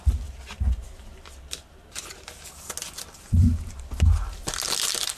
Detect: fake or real real